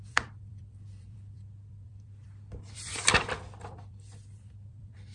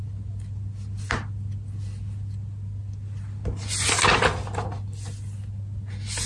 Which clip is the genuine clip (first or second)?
second